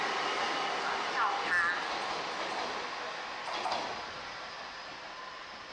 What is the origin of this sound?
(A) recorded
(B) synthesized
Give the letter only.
A